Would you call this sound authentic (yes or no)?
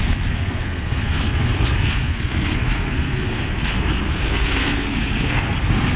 no